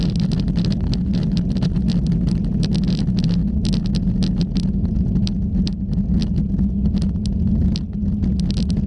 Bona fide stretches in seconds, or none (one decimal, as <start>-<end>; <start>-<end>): 0.0-1.9; 3.0-3.4; 4.0-8.9